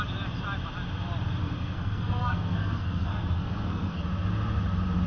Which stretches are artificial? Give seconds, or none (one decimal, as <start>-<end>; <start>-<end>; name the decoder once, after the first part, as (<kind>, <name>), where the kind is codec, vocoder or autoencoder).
1.4-4.0 (codec, SNAC)